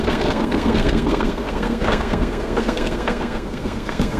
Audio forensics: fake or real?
fake